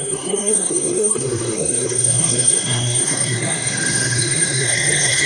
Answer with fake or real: fake